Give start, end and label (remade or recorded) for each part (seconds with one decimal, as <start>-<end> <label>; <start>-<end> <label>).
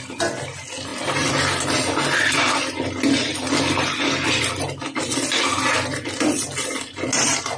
0.0-7.6 recorded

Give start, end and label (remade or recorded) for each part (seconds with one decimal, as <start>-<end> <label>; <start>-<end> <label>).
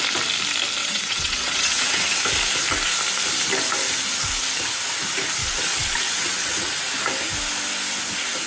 0.0-0.8 recorded; 0.8-2.2 remade; 2.2-5.4 recorded; 5.4-6.8 remade; 6.8-8.5 recorded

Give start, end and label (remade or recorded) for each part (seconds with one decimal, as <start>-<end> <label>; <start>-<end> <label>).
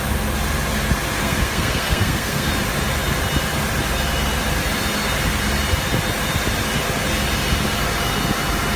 0.0-1.2 recorded; 1.2-2.5 remade; 2.5-8.8 recorded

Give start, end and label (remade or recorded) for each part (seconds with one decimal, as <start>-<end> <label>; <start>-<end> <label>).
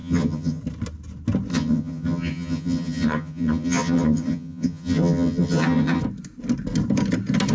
0.0-0.6 remade; 0.6-1.5 recorded; 1.5-6.0 remade; 6.0-7.5 recorded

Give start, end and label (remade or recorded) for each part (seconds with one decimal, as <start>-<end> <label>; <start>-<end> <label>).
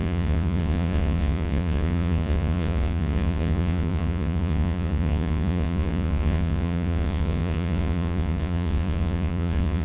0.0-9.8 remade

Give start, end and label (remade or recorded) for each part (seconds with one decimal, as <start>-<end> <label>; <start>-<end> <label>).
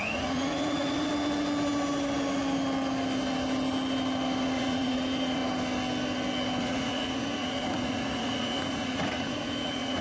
0.0-1.1 remade; 1.1-4.4 recorded; 4.4-5.4 remade; 5.4-6.6 recorded; 6.6-10.0 remade